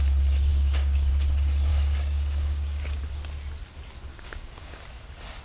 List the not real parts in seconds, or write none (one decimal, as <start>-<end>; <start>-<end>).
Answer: 0.5-1.1; 1.7-3.0; 4.1-4.8